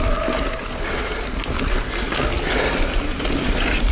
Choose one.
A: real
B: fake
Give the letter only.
A